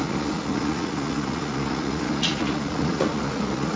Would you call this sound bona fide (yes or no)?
no